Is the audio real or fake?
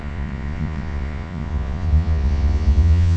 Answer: fake